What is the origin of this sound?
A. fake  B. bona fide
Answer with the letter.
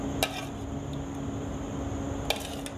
B